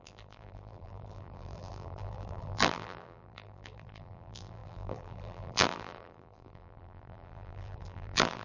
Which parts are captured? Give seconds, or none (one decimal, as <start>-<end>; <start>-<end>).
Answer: none